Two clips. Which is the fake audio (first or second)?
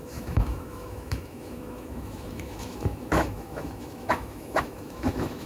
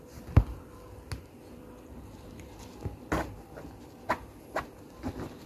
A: first